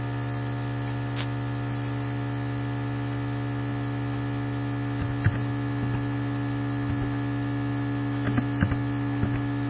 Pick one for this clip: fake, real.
real